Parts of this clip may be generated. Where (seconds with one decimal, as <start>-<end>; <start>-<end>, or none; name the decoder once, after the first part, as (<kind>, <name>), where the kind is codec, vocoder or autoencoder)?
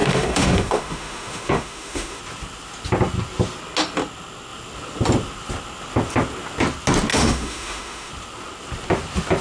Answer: 0.0-2.2 (autoencoder, DAC-VAE); 7.1-8.1